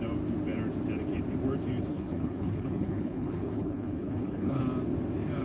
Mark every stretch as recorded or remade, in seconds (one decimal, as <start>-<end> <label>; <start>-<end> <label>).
0.0-1.9 recorded; 1.9-4.6 remade; 4.6-5.4 recorded